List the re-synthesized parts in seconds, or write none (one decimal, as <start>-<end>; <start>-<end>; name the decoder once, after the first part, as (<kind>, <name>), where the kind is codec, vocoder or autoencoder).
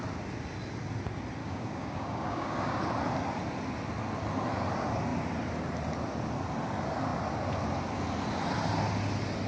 1.4-2.8 (codec, DAC)